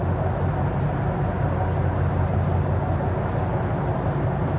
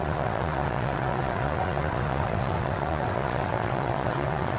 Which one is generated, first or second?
second